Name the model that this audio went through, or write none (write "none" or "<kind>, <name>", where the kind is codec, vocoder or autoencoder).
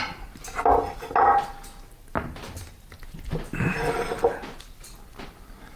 none